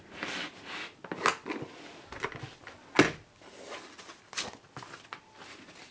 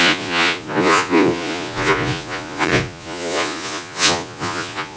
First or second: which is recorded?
first